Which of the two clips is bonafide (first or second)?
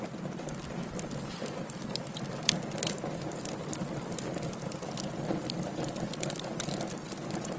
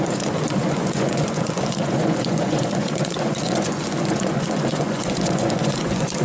first